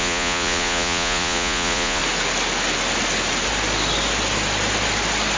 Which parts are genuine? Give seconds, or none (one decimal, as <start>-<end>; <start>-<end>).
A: 2.0-5.4